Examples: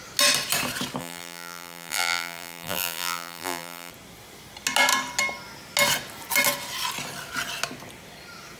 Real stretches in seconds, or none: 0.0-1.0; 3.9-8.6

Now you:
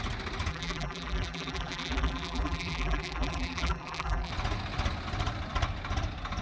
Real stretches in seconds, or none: 0.0-0.5; 4.3-6.4

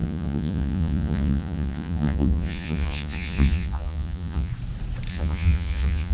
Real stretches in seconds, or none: 4.5-5.1